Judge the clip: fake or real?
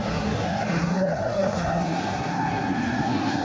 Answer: fake